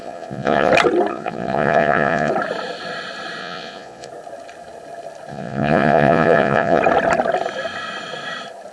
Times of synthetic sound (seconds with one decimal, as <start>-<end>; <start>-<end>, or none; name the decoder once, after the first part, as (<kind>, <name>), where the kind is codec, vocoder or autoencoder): 0.0-0.7 (vocoder, Vocos); 1.1-2.3; 3.4-4.1; 5.3-6.8